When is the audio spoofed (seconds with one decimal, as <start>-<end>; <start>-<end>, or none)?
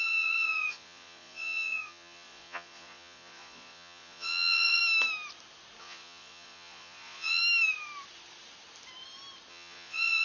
0.0-4.8; 5.8-7.4; 9.5-10.2